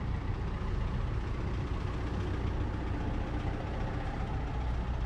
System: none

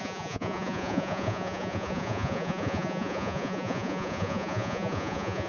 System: vocoder, Vocos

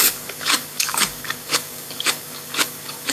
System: codec, DAC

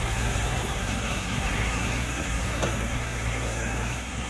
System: codec, SNAC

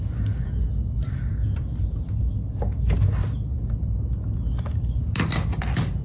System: none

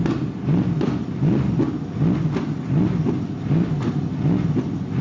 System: none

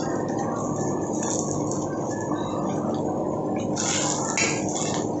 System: none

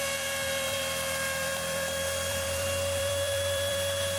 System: vocoder, BigVGAN v2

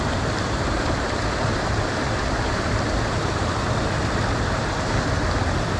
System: vocoder, BigVGAN v2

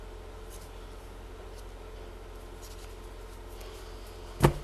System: none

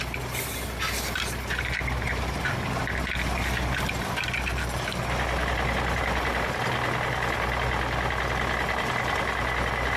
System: none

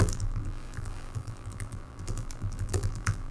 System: vocoder, BigVGAN v2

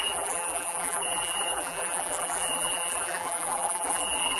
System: vocoder, BigVGAN v2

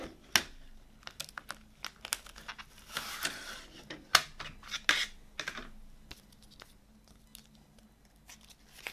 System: none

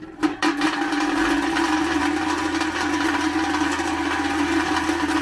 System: none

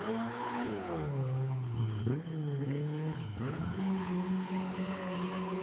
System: codec, HILCodec